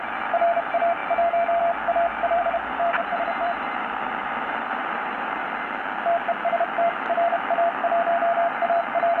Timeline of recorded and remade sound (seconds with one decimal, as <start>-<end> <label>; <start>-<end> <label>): 0.0-2.1 recorded; 2.1-5.7 remade; 5.7-9.2 recorded